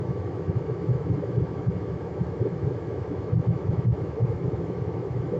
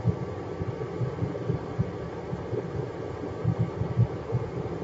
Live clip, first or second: second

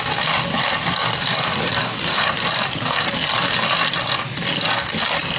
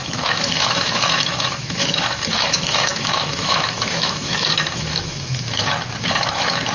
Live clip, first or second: first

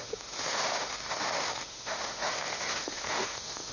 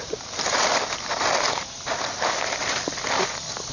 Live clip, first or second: second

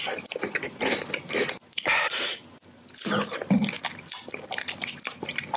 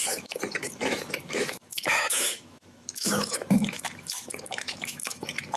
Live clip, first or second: first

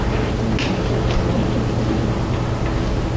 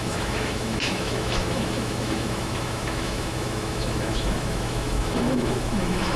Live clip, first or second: first